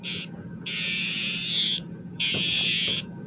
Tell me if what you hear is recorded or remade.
remade